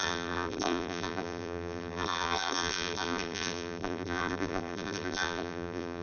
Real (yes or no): no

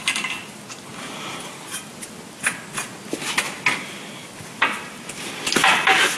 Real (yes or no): yes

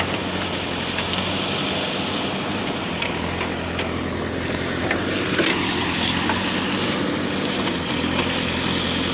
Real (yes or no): yes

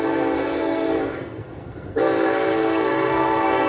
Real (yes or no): no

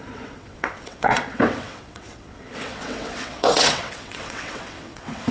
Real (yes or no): no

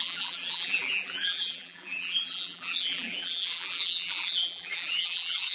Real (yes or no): no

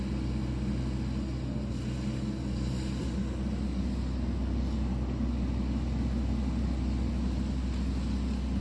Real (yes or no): yes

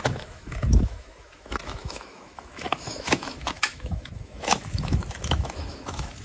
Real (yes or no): no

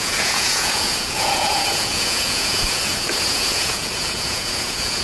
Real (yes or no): no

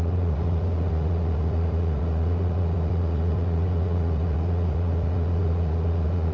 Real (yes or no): no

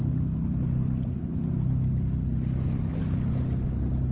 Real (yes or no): yes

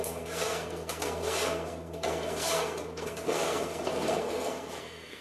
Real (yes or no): no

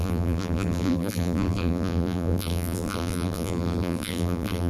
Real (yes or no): no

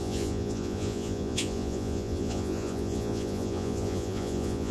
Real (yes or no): no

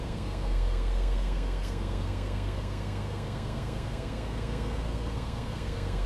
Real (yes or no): no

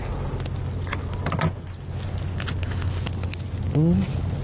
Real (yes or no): yes